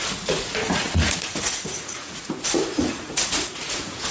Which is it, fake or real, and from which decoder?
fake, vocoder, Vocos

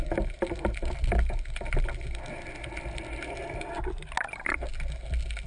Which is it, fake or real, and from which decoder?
real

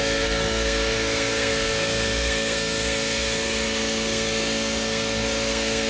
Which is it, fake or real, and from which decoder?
fake, codec, SNAC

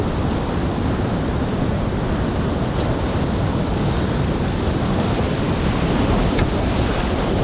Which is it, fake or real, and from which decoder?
fake, vocoder, BigVGAN v2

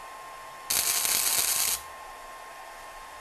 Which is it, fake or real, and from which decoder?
real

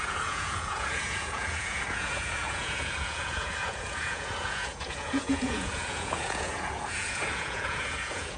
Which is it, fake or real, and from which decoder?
fake, vocoder, Vocos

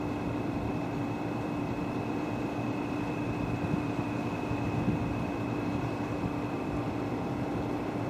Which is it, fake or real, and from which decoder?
fake, vocoder, BigVGAN v2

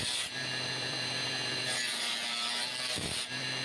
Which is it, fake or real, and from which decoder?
fake, vocoder, BigVGAN v2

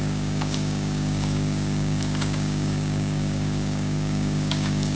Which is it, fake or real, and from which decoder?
fake, codec, DAC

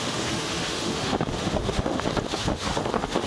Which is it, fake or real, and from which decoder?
fake, autoencoder, DAC-VAE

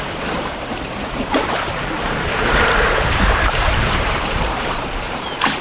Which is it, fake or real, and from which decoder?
fake, vocoder, BigVGAN v2